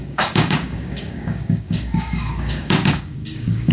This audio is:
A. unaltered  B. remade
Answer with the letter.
B